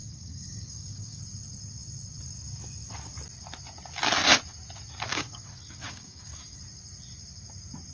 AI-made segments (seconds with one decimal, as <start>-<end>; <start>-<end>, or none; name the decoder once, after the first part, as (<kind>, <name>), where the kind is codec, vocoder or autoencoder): 0.0-1.2 (codec, DAC); 5.1-6.6